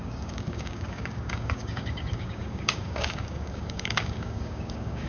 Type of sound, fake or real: fake